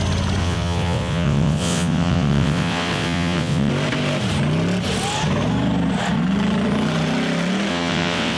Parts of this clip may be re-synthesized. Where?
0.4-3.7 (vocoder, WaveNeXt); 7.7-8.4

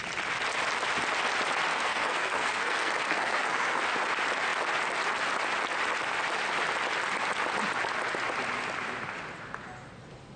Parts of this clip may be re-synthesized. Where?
1.7-3.8 (codec, SNAC)

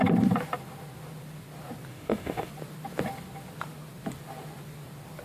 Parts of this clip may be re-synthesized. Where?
1.9-2.5 (autoencoder, DAC-VAE)

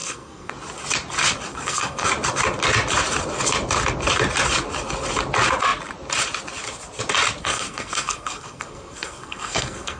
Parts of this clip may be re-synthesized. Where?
0.0-0.5 (codec, SNAC); 1.5-2.1; 7.4-10.0